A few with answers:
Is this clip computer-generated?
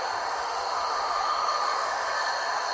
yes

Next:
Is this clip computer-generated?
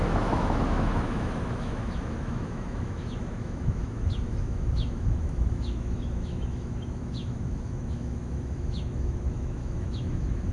yes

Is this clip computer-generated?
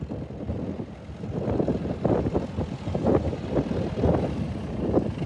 no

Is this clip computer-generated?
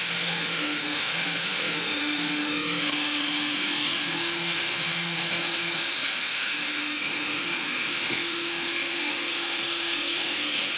yes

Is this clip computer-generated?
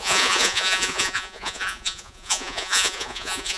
yes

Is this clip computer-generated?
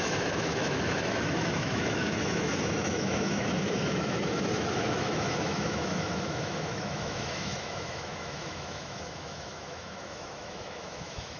yes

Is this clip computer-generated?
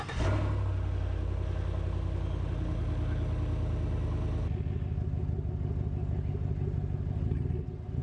no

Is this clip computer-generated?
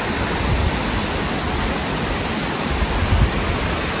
no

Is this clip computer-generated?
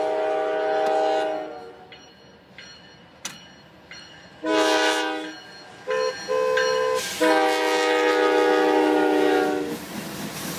no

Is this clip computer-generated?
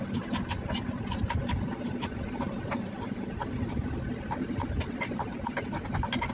no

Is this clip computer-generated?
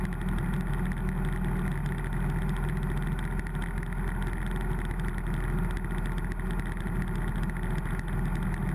no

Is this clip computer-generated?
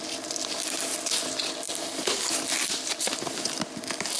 no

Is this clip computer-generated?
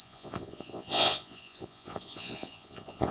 yes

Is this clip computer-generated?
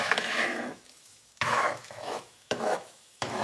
yes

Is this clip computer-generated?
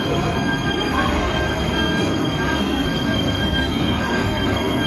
yes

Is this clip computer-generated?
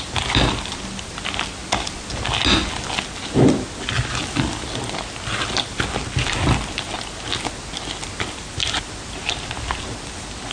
no